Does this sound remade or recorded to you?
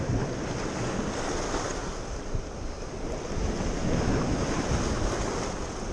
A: recorded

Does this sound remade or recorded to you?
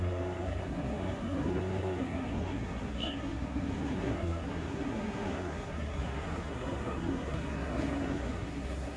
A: remade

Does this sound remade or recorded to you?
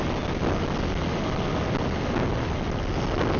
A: recorded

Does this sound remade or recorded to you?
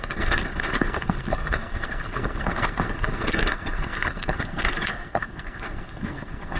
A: remade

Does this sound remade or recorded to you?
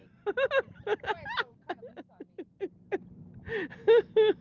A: recorded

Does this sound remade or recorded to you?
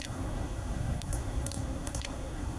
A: remade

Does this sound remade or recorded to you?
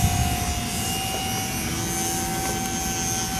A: recorded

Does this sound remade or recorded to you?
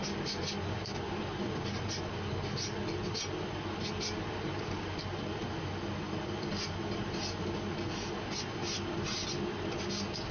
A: recorded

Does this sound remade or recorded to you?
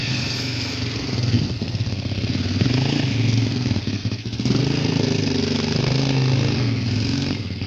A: remade